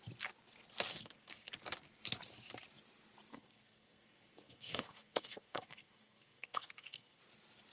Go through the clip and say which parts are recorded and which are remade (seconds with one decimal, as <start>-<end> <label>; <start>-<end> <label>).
0.0-0.9 recorded; 0.9-1.5 remade; 1.5-3.3 recorded; 3.3-7.2 remade; 7.2-7.7 recorded